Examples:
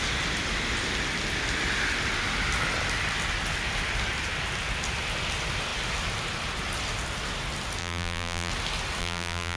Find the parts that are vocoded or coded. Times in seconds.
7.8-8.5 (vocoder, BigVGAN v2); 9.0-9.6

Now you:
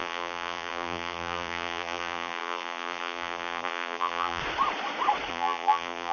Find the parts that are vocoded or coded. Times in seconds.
0.0-4.4 (vocoder, BigVGAN v2); 5.3-6.1

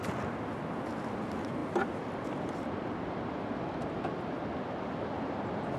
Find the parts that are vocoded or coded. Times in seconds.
none

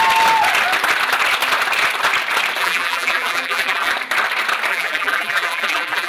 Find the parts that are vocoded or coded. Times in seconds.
2.6-3.9 (vocoder, BigVGAN v2); 4.7-6.1

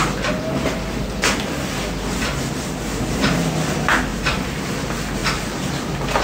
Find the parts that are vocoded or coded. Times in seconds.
4.1-4.6 (vocoder, BigVGAN v2); 5.2-5.7

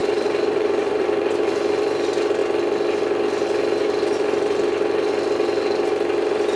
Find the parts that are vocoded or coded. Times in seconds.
0.0-1.6 (vocoder, BigVGAN v2)